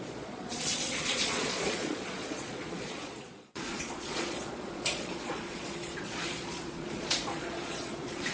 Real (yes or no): no